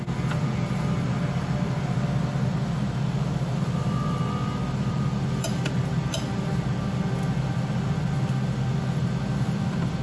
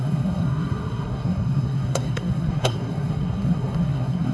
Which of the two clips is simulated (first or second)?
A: second